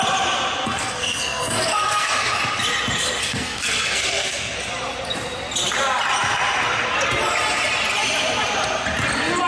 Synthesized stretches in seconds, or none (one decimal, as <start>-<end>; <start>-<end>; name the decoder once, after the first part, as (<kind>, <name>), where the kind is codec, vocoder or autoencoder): 0.6-2.4 (codec, SNAC); 3.2-4.6